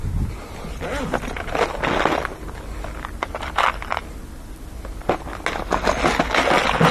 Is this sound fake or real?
real